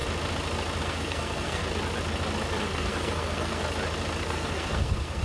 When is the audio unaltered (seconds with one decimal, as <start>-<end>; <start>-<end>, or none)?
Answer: 0.0-0.8; 1.6-2.6; 3.6-4.2